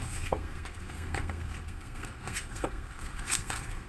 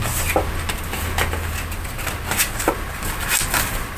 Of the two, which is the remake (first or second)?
first